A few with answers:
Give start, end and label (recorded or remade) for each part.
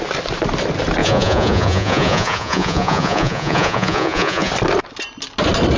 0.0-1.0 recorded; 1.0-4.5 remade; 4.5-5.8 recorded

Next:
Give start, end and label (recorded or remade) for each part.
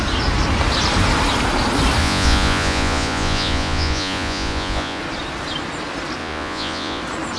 0.0-2.0 recorded; 2.0-5.0 remade; 5.0-6.2 recorded; 6.2-7.0 remade; 7.0-7.4 recorded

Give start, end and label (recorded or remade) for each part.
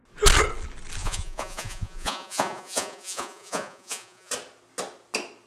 0.0-1.0 recorded; 1.0-4.3 remade; 4.3-5.5 recorded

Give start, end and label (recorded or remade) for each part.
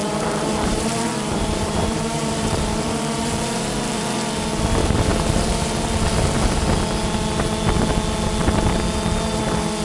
0.0-4.0 remade; 4.0-9.8 recorded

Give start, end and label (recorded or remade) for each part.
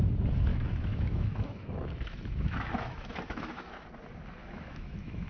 0.0-0.5 recorded; 0.5-3.7 remade; 3.7-4.4 recorded; 4.4-5.3 remade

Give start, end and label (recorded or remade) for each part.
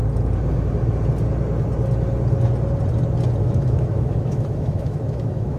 0.0-3.4 recorded; 3.4-5.6 remade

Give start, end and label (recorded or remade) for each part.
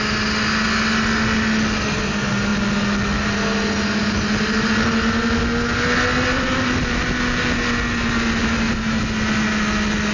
0.0-8.4 recorded; 8.4-9.0 remade; 9.0-10.1 recorded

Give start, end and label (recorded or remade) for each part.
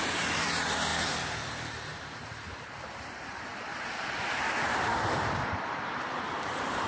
0.0-6.9 remade